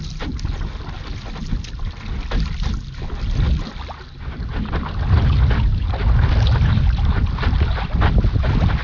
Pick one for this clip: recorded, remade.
recorded